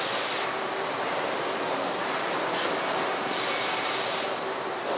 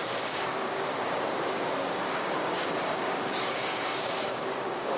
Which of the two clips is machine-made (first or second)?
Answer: second